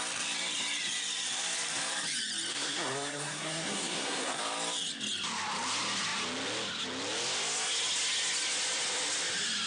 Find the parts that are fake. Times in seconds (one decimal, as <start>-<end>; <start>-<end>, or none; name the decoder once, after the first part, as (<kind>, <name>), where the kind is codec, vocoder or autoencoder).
2.5-4.4 (codec, SNAC)